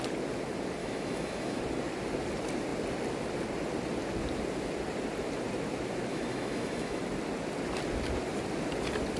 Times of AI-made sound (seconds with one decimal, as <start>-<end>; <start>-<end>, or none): 0.8-1.6; 6.1-7.0